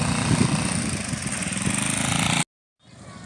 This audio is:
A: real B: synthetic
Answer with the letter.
A